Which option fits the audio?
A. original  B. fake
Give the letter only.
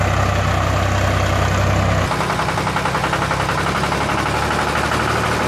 A